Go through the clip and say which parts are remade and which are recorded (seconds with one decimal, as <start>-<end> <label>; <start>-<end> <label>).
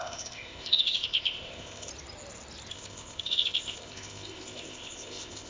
0.0-1.9 remade; 1.9-2.7 recorded; 2.7-5.5 remade